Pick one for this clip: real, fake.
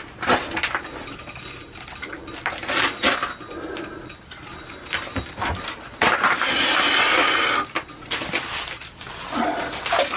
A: real